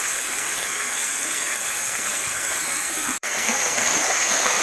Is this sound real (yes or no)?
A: no